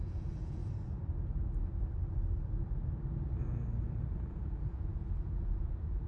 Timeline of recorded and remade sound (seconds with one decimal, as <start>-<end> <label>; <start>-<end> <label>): 0.0-0.6 remade; 0.6-4.3 recorded; 4.3-6.1 remade